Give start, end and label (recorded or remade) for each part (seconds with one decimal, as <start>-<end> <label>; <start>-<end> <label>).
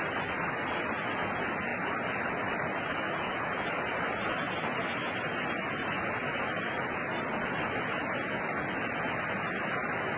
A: 0.0-10.2 recorded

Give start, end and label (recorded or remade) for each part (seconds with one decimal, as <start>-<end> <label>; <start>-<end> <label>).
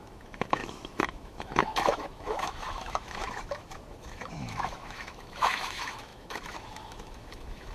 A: 0.0-7.7 remade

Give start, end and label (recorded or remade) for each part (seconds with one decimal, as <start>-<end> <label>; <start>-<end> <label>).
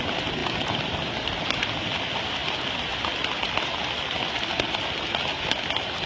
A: 0.0-0.4 recorded; 0.4-1.1 remade; 1.1-2.4 recorded; 2.4-6.1 remade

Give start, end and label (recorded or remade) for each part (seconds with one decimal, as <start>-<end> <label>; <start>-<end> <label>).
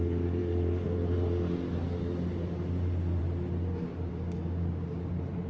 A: 0.0-4.1 recorded; 4.1-5.1 remade; 5.1-5.5 recorded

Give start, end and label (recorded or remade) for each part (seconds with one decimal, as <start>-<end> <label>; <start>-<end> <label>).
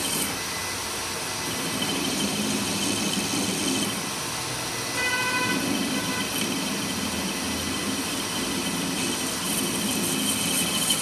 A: 0.0-0.6 recorded; 0.6-2.8 remade; 2.8-11.0 recorded